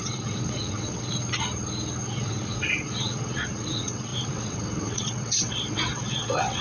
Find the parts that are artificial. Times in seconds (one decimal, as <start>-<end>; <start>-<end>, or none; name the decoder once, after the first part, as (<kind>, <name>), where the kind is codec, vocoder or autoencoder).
0.0-1.1 (vocoder, WaveNeXt); 2.1-6.6